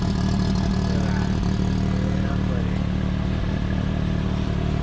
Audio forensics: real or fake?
real